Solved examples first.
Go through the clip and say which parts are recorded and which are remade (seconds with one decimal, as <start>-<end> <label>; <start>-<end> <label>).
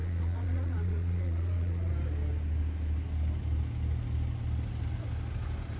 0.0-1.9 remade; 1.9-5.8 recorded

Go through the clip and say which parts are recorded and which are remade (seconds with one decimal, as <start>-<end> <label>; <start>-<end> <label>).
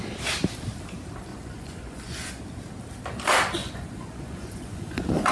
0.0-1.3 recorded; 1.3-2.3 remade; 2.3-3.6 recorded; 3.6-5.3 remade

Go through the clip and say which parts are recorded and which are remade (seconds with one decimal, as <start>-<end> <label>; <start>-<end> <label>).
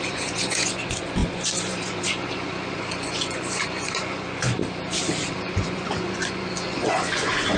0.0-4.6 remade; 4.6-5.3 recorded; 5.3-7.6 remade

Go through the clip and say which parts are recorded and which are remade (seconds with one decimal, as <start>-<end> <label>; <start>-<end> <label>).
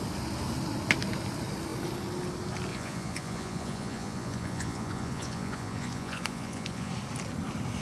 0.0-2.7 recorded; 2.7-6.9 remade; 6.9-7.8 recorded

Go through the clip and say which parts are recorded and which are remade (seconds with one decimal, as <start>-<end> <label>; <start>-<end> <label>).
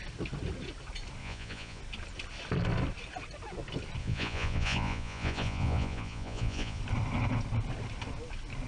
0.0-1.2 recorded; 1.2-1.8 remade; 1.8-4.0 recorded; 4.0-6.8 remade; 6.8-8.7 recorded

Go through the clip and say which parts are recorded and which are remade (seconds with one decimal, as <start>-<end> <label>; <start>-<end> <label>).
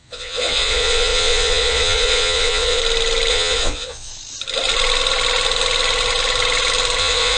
0.0-2.8 remade; 2.8-3.3 recorded; 3.3-4.1 remade; 4.1-7.0 recorded; 7.0-7.4 remade